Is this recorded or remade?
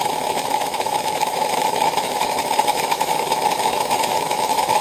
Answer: remade